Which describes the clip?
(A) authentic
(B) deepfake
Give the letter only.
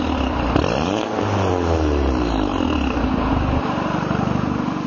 A